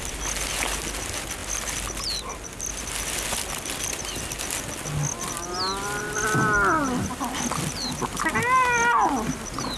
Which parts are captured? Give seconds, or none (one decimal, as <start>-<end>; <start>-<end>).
0.0-9.8